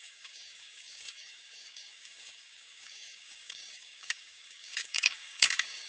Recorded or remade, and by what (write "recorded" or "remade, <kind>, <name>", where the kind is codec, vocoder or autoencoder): remade, codec, DAC